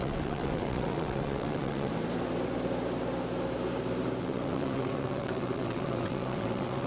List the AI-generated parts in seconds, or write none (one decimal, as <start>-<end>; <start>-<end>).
0.0-1.9; 4.2-6.9